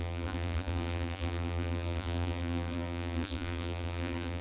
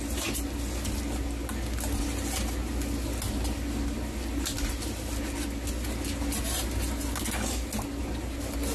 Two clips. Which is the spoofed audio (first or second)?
first